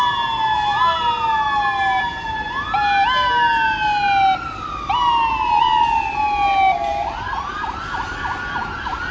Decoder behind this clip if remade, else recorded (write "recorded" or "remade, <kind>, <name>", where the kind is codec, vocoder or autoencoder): recorded